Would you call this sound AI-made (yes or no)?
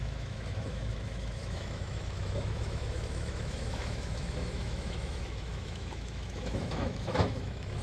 yes